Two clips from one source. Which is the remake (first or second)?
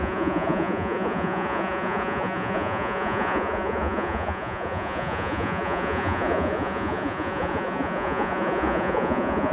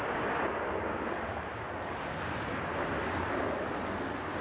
first